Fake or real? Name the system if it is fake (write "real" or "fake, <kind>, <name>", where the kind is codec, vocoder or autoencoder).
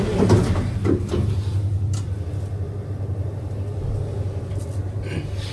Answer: real